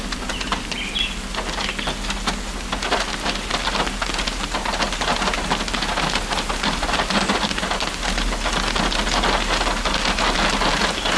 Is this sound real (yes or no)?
yes